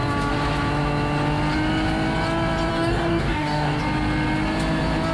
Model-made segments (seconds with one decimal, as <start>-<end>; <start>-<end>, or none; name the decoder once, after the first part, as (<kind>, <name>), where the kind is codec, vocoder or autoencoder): 2.7-3.8 (codec, DAC)